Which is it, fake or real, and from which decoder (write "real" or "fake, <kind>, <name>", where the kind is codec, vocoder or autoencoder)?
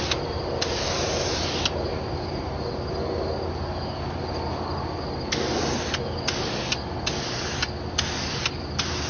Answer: real